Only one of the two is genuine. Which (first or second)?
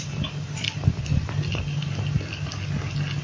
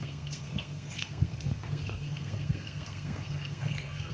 first